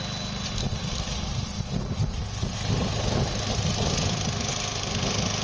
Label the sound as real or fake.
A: real